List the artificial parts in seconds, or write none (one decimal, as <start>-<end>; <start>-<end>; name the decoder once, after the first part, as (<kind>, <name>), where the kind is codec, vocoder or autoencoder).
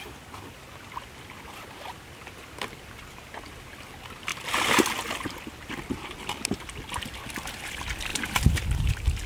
none